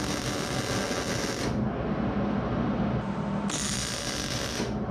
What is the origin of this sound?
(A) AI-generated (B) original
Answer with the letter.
B